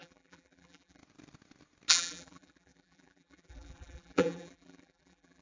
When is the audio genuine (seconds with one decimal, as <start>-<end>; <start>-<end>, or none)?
1.0-1.9